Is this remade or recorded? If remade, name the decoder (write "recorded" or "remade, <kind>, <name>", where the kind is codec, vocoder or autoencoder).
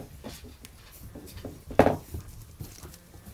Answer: recorded